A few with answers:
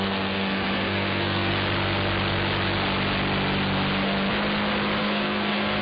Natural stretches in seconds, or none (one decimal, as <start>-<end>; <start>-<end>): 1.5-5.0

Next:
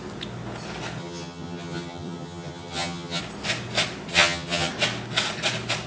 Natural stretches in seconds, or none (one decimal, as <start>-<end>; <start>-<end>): 0.0-1.0; 3.2-4.1; 4.7-5.9

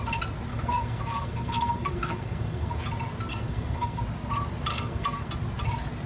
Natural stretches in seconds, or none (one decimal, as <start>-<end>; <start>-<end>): 0.0-0.5; 2.8-3.3; 4.0-4.7; 5.3-6.1